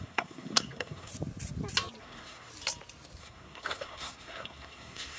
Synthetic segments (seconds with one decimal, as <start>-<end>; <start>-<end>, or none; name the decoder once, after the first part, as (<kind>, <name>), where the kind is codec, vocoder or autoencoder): 0.0-1.1 (codec, SNAC); 2.0-2.5; 3.2-5.2

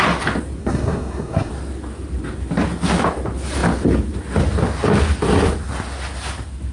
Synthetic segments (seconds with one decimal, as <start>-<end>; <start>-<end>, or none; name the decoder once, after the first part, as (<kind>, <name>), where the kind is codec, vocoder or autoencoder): 0.6-1.5 (codec, SNAC)